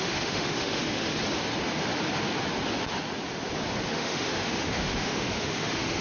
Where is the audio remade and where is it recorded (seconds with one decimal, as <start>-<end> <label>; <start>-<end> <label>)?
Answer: 0.0-1.1 remade; 1.1-3.9 recorded; 3.9-6.0 remade